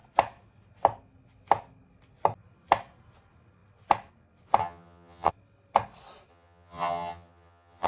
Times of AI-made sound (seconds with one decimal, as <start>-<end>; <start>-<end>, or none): 4.6-5.3; 6.3-7.9